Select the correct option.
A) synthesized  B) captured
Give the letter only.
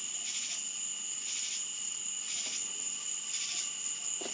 B